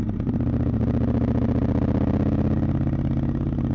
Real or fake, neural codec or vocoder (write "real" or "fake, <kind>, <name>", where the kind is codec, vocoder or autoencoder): real